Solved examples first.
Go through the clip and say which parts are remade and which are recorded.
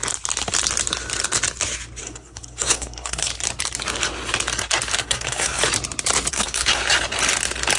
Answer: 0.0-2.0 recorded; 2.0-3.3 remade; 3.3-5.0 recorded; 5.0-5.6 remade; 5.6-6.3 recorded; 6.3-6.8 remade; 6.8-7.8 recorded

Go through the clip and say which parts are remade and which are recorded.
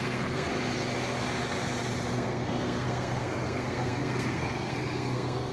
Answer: 0.0-0.5 remade; 0.5-2.1 recorded; 2.1-5.5 remade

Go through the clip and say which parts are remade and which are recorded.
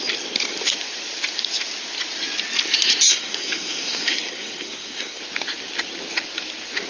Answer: 0.0-3.1 recorded; 3.1-5.2 remade; 5.2-6.9 recorded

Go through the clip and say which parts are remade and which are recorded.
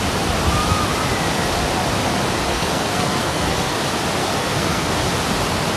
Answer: 0.0-2.5 recorded; 2.5-3.8 remade; 3.8-4.2 recorded; 4.2-4.9 remade; 4.9-5.8 recorded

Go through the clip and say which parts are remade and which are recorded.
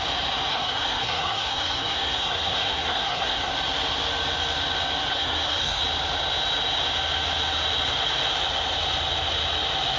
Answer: 0.0-0.5 recorded; 0.5-3.5 remade; 3.5-5.1 recorded; 5.1-5.8 remade; 5.8-10.0 recorded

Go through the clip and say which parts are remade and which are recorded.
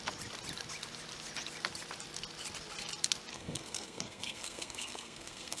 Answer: 0.0-3.3 recorded; 3.3-5.6 remade